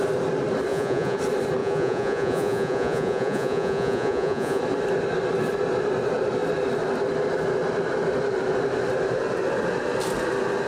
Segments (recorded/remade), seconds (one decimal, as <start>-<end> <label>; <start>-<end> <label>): 0.0-0.7 recorded; 0.7-1.2 remade; 1.2-1.6 recorded; 1.6-4.6 remade; 4.6-10.7 recorded